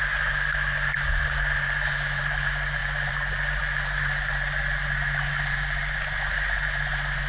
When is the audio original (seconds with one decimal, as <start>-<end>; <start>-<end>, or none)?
0.0-7.3